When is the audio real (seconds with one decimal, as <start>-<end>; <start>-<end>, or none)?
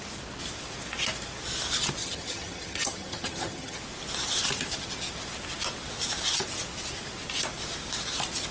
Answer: 0.0-2.0; 3.8-8.5